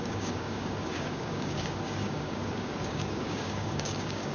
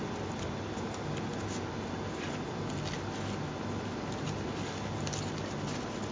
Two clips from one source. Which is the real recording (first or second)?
second